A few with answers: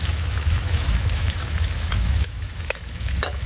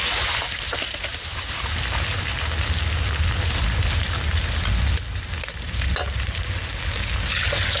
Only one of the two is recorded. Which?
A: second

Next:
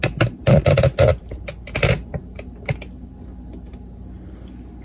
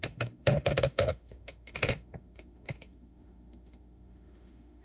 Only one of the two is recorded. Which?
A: first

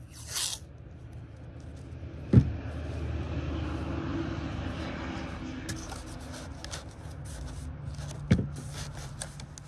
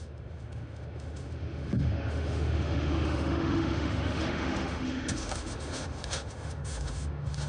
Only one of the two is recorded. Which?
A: first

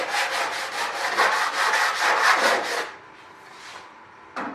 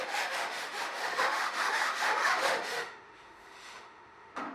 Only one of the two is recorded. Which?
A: first